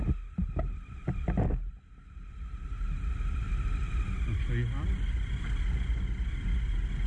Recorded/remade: recorded